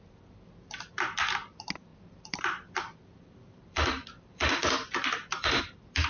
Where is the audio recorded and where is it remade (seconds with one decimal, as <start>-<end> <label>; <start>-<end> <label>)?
0.0-1.9 recorded; 1.9-5.6 remade; 5.6-6.1 recorded